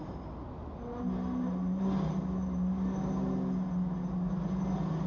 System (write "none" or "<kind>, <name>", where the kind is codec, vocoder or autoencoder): none